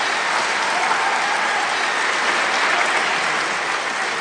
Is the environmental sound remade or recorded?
recorded